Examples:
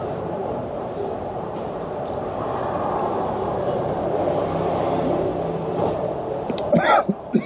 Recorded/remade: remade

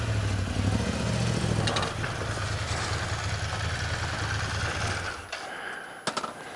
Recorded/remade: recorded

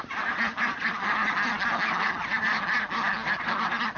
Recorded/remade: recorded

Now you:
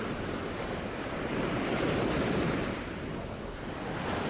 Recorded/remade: recorded